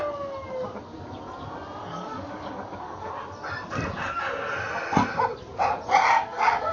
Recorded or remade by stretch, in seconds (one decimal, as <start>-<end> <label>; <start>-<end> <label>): 0.0-1.8 recorded; 1.8-3.1 remade; 3.1-6.7 recorded